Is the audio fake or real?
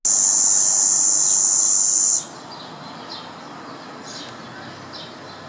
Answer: real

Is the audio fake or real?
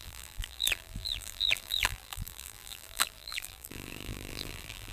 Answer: fake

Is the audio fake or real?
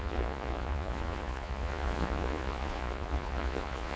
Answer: fake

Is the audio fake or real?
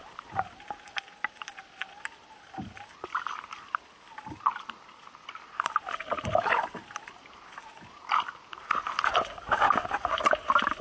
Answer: real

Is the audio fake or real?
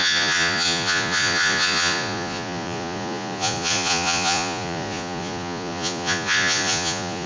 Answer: fake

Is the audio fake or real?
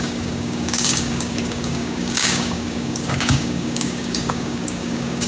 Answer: fake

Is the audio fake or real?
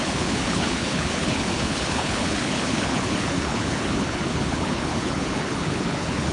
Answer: fake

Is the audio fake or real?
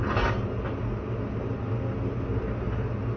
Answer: real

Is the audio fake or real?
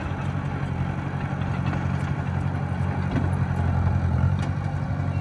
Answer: real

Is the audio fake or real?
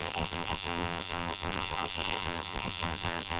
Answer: fake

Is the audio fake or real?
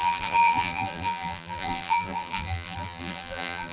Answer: fake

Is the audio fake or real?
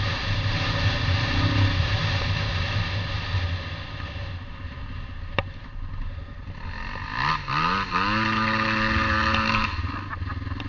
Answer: real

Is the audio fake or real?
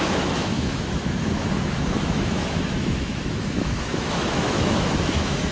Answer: fake